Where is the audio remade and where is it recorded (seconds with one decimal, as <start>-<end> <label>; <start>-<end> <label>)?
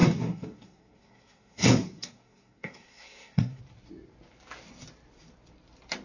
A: 0.0-3.6 remade; 3.6-6.0 recorded